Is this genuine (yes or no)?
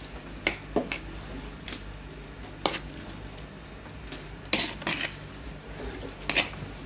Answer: yes